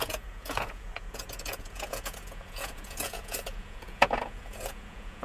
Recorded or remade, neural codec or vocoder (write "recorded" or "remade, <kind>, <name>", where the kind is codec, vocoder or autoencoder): remade, vocoder, Vocos